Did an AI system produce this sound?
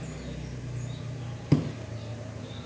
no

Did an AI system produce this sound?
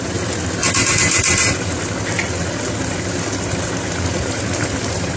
no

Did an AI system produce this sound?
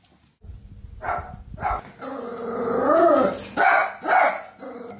no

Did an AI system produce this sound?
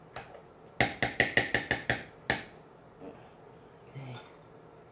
no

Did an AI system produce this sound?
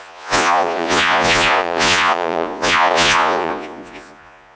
yes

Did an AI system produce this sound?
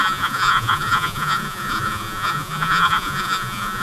yes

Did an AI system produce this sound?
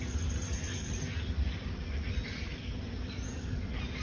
no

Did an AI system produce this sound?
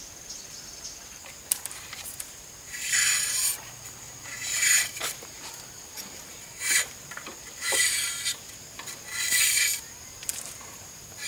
yes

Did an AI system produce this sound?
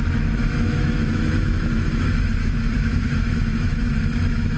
yes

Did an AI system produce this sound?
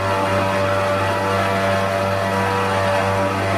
no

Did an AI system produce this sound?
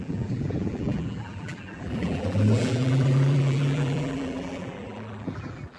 yes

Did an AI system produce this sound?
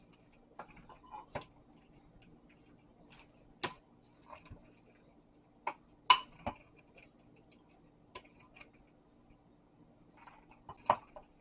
no